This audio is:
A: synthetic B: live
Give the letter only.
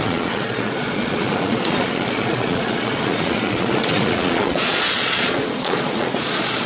A